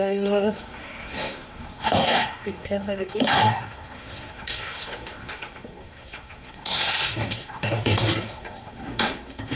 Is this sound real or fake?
fake